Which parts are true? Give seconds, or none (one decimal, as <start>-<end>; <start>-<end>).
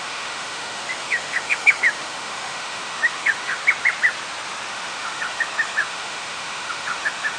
3.6-4.7